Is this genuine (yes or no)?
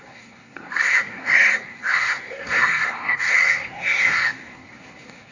no